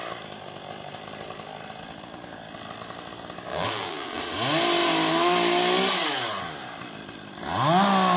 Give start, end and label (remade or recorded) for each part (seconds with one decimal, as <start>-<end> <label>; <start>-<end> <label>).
0.0-3.5 recorded; 3.5-4.2 remade; 4.2-8.2 recorded